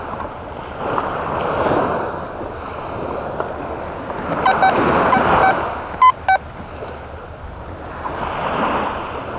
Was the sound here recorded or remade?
recorded